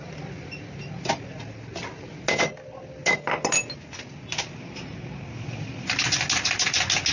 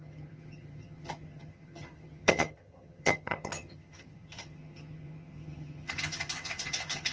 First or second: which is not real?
second